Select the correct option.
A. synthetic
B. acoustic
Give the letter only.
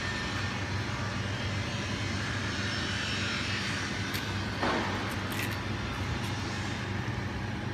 B